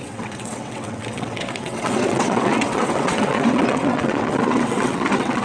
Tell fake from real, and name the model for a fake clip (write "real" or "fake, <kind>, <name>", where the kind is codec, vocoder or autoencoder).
fake, vocoder, WaveNeXt